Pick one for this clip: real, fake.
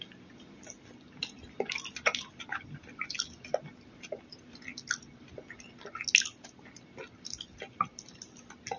real